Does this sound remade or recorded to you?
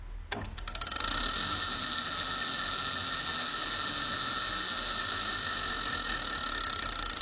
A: recorded